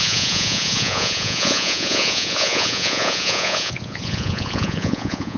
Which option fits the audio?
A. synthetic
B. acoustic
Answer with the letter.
A